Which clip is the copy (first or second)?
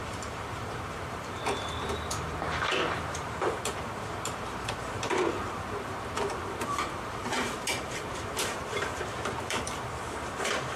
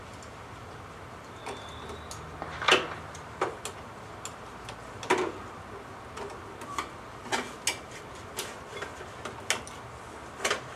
first